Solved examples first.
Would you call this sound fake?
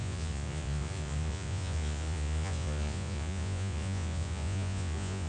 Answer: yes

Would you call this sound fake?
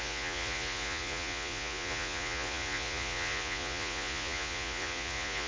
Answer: yes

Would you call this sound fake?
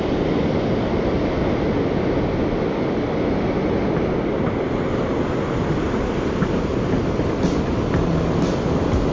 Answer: no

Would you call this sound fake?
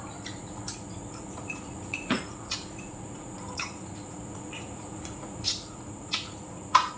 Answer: yes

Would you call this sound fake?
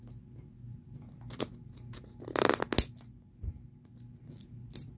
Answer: no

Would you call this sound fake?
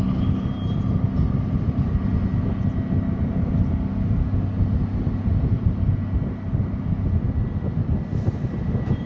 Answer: no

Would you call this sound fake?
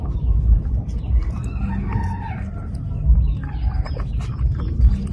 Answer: no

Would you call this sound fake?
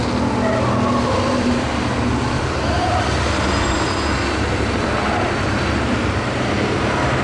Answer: no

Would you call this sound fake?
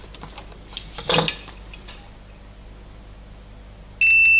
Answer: no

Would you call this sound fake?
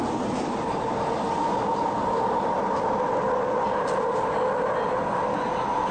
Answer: no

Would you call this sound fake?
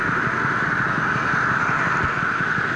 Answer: no